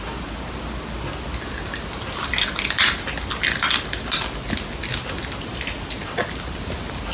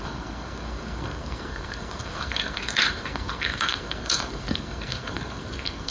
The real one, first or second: first